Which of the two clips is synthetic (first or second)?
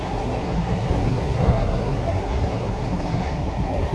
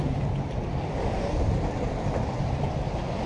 first